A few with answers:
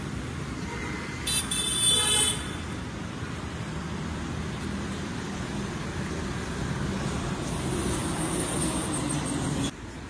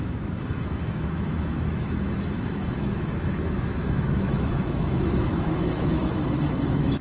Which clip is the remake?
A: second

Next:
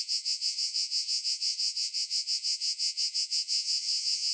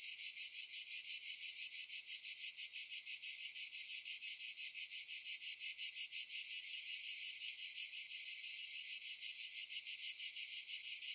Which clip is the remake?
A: first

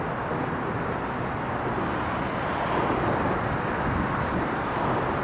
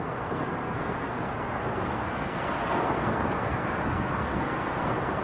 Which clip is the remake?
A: second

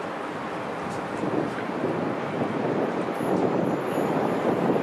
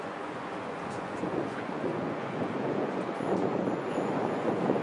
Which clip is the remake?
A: second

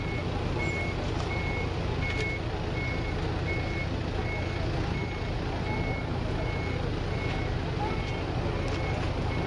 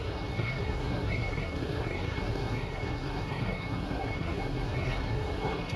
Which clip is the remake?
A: second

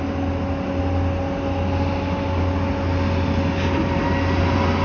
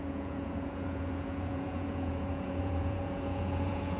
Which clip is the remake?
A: second